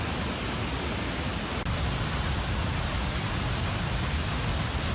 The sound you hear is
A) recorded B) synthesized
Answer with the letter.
A